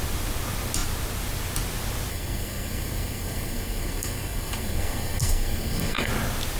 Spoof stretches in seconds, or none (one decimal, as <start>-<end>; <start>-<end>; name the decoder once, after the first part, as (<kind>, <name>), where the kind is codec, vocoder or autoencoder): 2.1-6.1 (codec, SNAC)